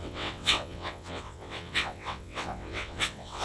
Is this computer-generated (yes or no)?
yes